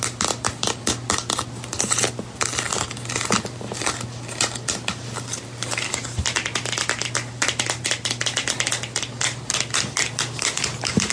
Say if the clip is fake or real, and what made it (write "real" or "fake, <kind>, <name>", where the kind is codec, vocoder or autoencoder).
real